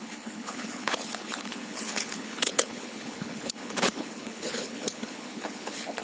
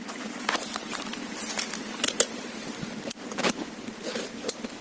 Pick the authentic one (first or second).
second